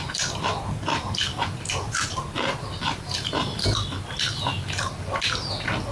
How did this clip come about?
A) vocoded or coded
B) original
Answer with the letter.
B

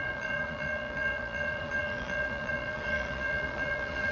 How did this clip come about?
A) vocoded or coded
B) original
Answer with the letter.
A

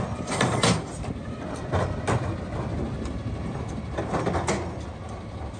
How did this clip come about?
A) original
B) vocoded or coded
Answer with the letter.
A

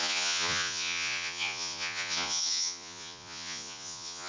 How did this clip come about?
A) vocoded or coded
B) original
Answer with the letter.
A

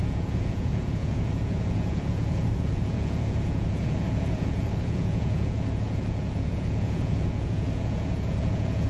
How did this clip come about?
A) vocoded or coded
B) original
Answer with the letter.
A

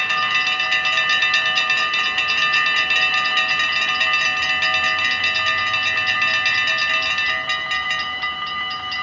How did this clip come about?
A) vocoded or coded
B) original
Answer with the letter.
B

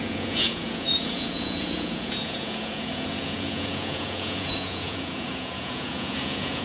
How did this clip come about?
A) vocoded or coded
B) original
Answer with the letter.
A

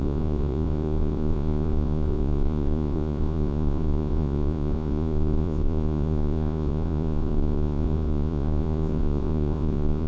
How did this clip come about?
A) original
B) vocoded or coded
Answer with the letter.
B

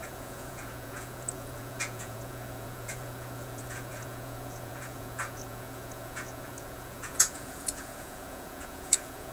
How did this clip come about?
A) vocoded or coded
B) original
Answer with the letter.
A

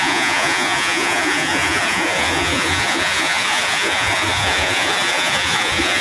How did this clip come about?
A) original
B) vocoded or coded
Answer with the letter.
B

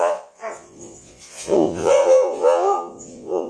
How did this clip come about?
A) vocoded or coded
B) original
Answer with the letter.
A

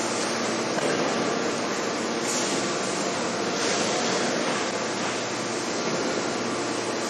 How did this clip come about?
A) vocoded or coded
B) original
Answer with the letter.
B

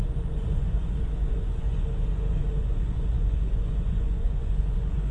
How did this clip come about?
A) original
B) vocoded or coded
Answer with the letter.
B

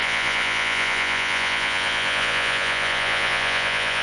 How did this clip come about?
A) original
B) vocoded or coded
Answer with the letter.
B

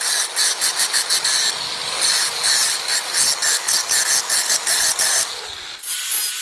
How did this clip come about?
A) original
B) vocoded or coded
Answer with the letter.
A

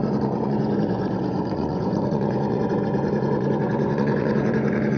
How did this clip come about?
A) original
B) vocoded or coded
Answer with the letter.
B